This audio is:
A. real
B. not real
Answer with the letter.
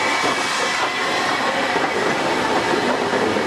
A